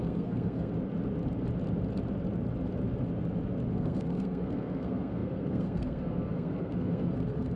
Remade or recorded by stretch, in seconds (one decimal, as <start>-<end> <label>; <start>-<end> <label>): 0.0-0.7 remade; 0.7-3.7 recorded; 3.7-7.6 remade